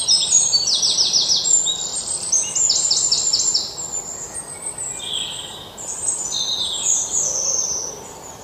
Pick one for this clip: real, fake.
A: real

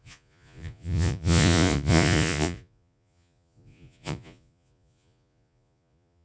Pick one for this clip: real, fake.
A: fake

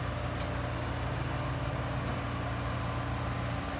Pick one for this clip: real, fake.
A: real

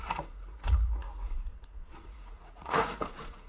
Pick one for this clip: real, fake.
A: fake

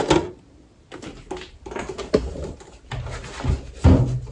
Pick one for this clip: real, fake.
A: real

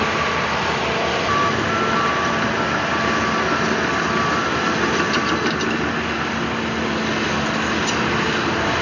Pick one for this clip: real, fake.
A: real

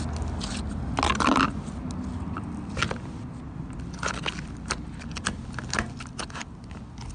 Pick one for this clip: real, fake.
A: real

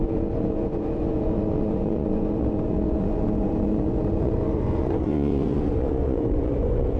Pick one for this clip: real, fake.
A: fake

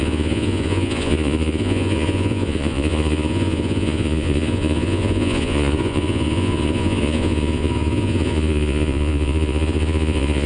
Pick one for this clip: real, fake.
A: fake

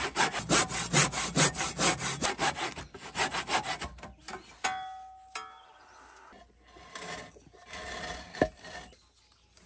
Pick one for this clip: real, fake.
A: real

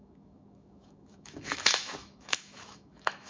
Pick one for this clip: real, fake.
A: fake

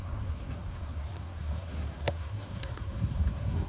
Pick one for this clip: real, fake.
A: fake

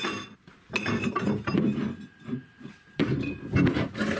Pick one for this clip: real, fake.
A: real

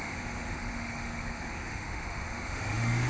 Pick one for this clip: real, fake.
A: fake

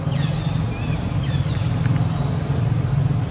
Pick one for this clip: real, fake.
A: real